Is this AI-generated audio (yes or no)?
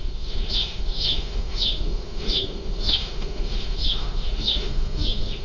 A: yes